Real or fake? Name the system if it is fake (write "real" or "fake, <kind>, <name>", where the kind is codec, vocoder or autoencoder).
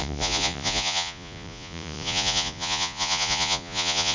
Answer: fake, vocoder, Vocos